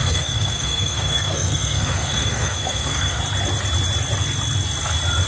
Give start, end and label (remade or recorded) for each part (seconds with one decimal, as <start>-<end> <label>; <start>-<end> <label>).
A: 0.0-3.2 remade; 3.2-5.3 recorded